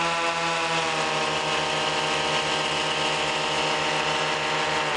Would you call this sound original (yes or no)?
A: yes